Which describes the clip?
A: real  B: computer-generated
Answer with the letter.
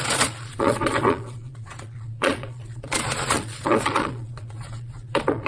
B